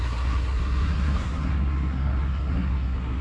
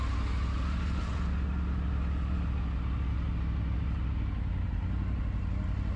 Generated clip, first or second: first